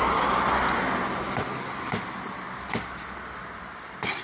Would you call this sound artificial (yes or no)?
no